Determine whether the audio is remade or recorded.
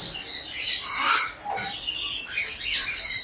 remade